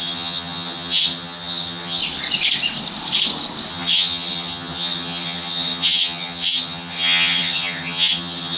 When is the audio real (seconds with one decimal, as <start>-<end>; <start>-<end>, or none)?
2.0-3.7